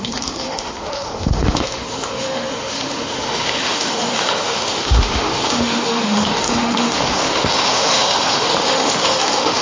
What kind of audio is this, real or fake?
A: fake